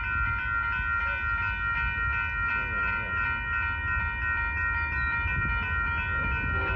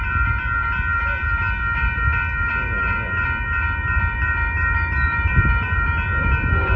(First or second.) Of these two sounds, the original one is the first